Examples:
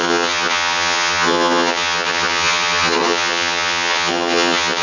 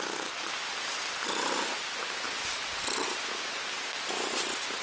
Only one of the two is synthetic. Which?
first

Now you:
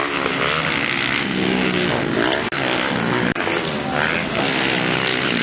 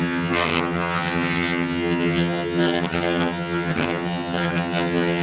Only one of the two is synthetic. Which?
second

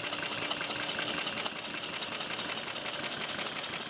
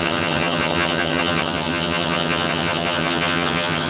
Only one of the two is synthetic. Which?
second